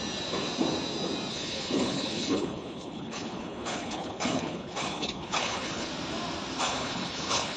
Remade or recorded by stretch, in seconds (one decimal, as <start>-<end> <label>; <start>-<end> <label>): 0.0-1.3 recorded; 1.3-5.9 remade; 5.9-6.7 recorded; 6.7-7.6 remade